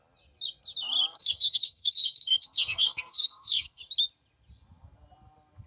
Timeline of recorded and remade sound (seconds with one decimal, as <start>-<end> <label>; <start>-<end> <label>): 0.0-1.2 recorded; 1.2-3.8 remade; 3.8-5.7 recorded